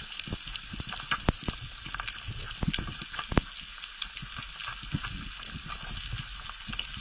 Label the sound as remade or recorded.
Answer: recorded